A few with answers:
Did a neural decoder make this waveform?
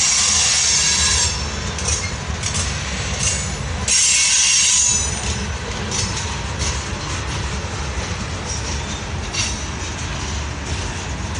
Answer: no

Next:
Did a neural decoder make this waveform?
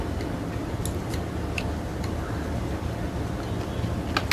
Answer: no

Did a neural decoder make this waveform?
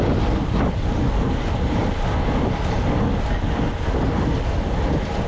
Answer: no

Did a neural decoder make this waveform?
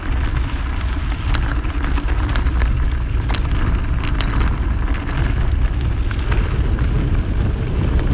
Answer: no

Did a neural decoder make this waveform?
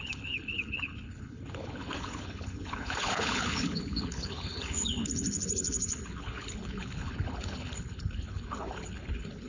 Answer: yes